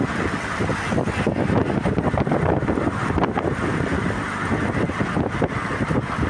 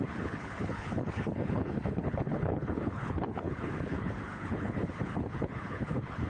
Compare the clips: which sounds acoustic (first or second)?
first